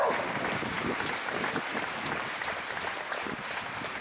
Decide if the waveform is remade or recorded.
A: recorded